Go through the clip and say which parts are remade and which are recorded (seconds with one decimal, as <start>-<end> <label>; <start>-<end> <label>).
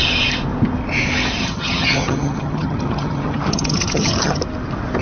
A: 0.0-1.4 recorded; 1.4-4.4 remade; 4.4-5.0 recorded